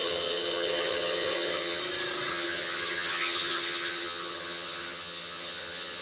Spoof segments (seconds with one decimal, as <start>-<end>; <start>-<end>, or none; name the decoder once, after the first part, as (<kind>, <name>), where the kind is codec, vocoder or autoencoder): 0.0-1.8 (vocoder, HiFi-GAN); 2.3-6.0

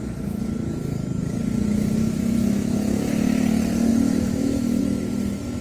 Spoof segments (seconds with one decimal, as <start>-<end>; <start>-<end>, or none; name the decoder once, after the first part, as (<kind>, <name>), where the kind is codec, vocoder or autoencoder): 2.0-3.1 (autoencoder, DAC-VAE); 3.9-4.8

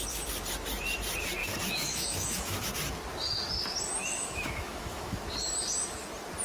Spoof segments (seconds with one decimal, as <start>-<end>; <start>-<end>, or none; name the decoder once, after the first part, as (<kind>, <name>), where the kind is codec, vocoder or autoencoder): 1.4-2.7 (autoencoder, DAC-VAE); 4.0-5.2

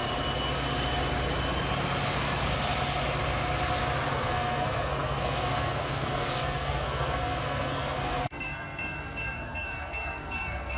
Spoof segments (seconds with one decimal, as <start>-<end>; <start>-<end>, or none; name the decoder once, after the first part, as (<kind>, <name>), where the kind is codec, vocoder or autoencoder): 4.1-10.8 (codec, SNAC)

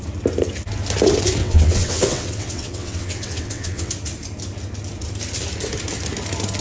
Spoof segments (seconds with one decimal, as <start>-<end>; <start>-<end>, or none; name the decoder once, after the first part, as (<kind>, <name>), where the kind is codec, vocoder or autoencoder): 1.4-3.9 (vocoder, WaveNeXt)

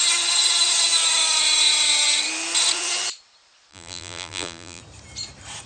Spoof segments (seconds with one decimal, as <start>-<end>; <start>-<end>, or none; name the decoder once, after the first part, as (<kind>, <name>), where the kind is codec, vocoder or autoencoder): 3.7-4.8 (vocoder, BigVGAN v2)

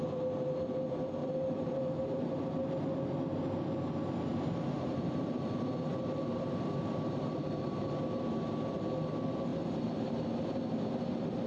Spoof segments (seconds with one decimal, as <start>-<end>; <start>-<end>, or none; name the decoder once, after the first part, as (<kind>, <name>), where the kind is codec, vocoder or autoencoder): 1.2-2.2 (vocoder, BigVGAN v2); 4.3-8.8; 9.5-10.3